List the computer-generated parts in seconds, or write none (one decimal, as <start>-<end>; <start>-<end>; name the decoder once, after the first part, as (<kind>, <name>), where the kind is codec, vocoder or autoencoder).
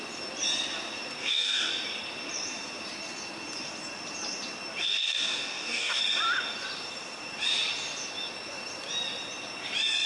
1.2-1.7 (codec, DAC); 4.8-6.0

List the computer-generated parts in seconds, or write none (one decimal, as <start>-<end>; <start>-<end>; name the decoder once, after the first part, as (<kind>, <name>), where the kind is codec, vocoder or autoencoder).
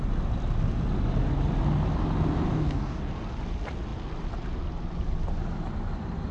2.5-3.1 (codec, DAC)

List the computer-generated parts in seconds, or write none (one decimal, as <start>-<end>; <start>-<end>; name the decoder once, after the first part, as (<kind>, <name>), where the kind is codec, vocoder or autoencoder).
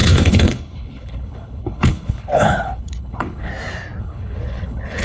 0.0-3.5 (codec, HILCodec); 4.0-5.0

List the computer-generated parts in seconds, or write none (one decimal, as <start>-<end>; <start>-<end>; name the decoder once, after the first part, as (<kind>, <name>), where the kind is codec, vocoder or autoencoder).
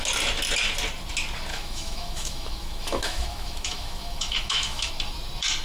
1.5-4.9 (autoencoder, DAC-VAE)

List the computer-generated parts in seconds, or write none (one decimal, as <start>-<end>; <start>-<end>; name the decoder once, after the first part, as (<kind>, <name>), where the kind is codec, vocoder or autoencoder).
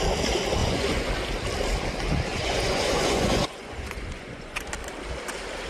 0.6-1.1 (vocoder, Vocos); 2.3-4.7